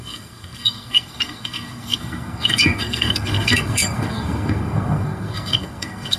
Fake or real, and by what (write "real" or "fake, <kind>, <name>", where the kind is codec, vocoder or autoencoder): fake, codec, SNAC